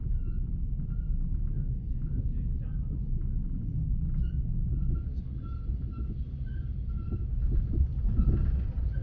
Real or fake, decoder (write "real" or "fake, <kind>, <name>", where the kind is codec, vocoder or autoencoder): real